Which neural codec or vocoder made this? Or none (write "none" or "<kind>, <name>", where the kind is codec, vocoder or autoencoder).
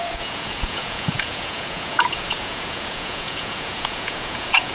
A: vocoder, Vocos